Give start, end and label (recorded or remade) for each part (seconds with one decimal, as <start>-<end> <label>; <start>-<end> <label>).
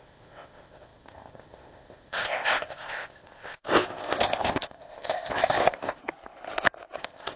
0.0-6.0 remade; 6.0-7.0 recorded; 7.0-7.4 remade